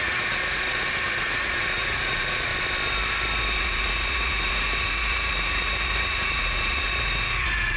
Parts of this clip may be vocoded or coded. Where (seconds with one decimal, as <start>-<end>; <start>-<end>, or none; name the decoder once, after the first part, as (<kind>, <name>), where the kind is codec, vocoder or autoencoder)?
0.0-2.5 (vocoder, Vocos); 3.6-7.8